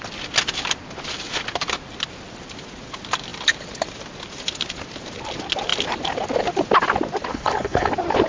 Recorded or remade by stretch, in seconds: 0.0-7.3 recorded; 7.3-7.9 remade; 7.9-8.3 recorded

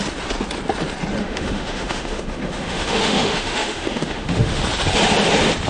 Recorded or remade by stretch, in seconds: 0.0-1.2 recorded; 1.2-4.6 remade; 4.6-5.7 recorded

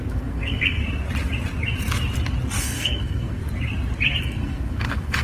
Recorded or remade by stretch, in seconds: 0.0-0.8 remade; 0.8-2.6 recorded; 2.6-3.4 remade; 3.4-4.2 recorded; 4.2-5.2 remade

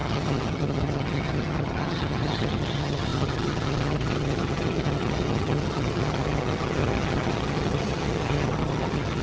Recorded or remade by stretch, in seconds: 0.0-9.2 remade

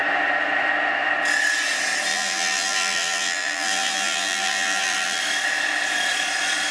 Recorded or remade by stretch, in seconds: 0.0-2.1 recorded; 2.1-5.2 remade; 5.2-6.7 recorded

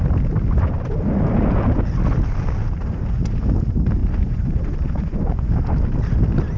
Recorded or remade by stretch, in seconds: 0.0-4.0 recorded; 4.0-5.5 remade; 5.5-6.6 recorded

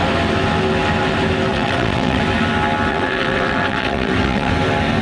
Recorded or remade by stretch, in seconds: 0.0-1.5 recorded; 1.5-2.2 remade; 2.2-2.9 recorded; 2.9-4.5 remade; 4.5-5.0 recorded